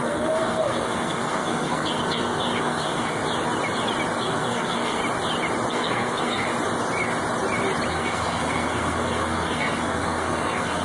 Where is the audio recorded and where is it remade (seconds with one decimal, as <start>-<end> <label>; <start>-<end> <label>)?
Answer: 0.0-3.2 remade; 3.2-4.2 recorded; 4.2-5.0 remade; 5.0-5.7 recorded; 5.7-6.5 remade; 6.5-7.9 recorded; 7.9-10.8 remade